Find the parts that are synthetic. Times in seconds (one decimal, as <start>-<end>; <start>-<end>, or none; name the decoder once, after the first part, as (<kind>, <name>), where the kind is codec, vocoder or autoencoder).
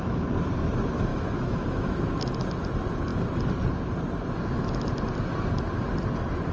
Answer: 1.1-2.1 (autoencoder, DAC-VAE)